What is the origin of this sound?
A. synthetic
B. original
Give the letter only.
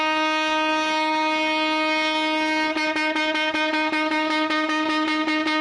B